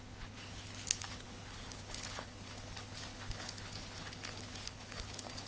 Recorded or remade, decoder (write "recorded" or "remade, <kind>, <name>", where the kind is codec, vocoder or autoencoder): remade, codec, HILCodec